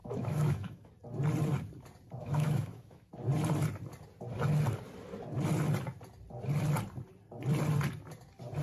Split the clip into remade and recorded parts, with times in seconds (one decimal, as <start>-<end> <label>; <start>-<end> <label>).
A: 0.0-0.9 remade; 0.9-2.2 recorded; 2.2-3.1 remade; 3.1-8.6 recorded